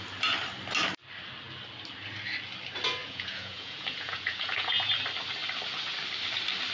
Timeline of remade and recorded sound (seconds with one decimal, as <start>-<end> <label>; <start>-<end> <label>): 0.0-3.0 recorded; 3.0-4.9 remade; 4.9-6.7 recorded